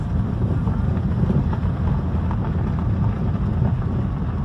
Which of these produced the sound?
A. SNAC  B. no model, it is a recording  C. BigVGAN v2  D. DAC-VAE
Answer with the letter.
B